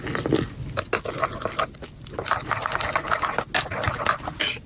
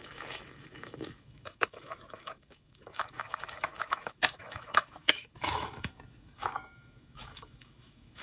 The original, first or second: first